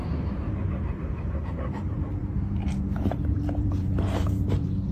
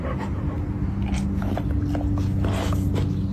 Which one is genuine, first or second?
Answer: second